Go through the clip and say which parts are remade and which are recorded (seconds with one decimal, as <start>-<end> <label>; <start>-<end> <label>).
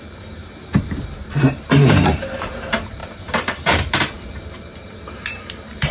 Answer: 0.0-5.9 remade